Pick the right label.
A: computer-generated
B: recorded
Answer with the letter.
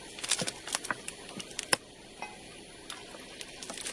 B